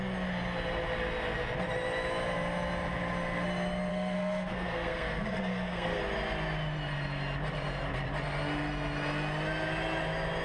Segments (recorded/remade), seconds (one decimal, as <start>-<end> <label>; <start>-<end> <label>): 0.0-3.9 recorded; 3.9-6.0 remade; 6.0-10.4 recorded